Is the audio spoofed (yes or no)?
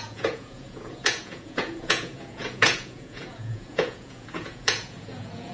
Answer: yes